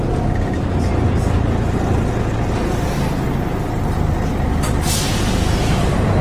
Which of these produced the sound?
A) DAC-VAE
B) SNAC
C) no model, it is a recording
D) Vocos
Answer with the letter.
C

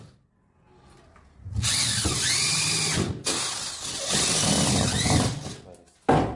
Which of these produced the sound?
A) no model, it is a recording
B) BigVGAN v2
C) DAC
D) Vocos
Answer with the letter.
A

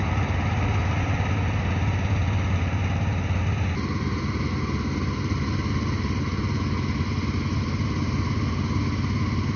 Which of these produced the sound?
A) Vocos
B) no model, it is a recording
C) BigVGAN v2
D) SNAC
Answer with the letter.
B